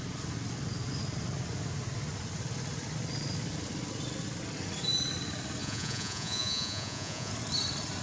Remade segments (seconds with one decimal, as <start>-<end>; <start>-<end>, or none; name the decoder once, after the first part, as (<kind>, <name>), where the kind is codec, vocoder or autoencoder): 5.6-7.3 (vocoder, Vocos)